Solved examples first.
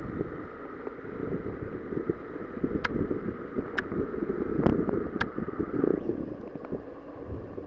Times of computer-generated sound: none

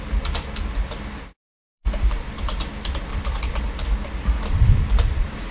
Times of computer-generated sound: 1.6-2.5 (vocoder, BigVGAN v2); 3.1-3.6